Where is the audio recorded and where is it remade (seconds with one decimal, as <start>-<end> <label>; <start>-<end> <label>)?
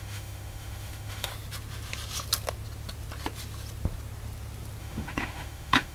0.0-1.3 remade; 1.3-4.8 recorded; 4.8-5.9 remade